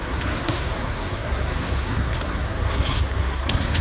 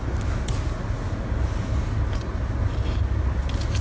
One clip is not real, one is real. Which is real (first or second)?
second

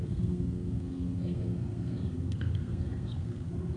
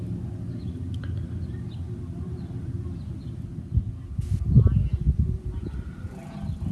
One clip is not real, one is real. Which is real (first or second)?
second